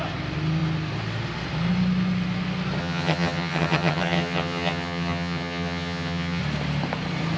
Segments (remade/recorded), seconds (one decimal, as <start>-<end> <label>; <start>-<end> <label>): 0.0-2.8 recorded; 2.8-6.4 remade; 6.4-7.4 recorded